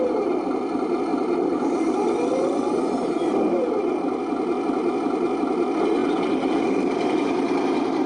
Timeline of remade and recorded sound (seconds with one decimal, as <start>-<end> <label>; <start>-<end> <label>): 0.0-6.0 recorded; 6.0-6.9 remade; 6.9-8.1 recorded